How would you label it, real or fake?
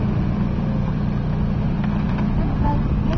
real